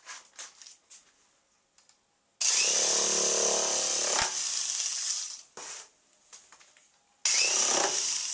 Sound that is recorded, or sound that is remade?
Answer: recorded